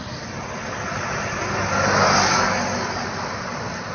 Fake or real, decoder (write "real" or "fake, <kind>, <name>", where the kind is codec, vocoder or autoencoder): real